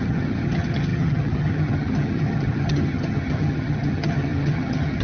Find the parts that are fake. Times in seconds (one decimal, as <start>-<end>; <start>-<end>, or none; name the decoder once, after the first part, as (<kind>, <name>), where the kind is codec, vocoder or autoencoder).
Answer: 0.0-5.0 (vocoder, HiFi-GAN)